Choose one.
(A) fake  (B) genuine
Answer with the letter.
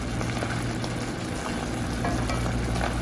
B